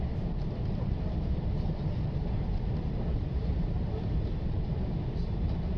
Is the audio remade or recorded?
remade